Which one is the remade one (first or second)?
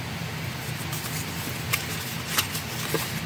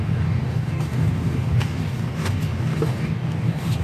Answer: second